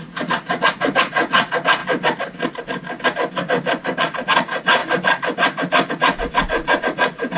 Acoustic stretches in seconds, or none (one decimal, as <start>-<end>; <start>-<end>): 1.8-4.0; 4.8-5.9